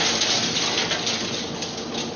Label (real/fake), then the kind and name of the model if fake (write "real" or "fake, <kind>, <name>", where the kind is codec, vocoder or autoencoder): real